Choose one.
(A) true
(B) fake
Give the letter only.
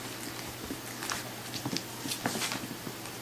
A